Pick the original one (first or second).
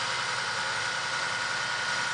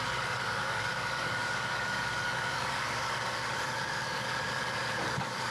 first